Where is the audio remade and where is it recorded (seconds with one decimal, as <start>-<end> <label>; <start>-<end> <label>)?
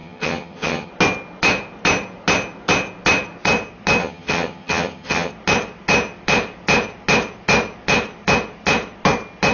0.0-0.9 remade; 0.9-4.0 recorded; 4.0-5.3 remade; 5.3-9.5 recorded